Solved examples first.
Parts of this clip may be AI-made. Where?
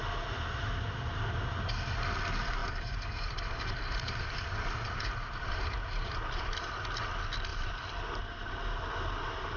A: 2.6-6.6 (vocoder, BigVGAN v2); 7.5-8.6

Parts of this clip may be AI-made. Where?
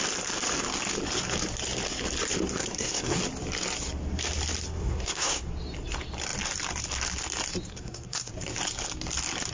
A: 2.6-3.2 (codec, SNAC); 4.8-5.5; 7.7-8.3